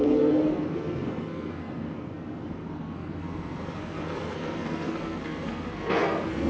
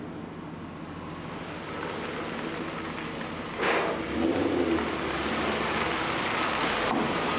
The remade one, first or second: first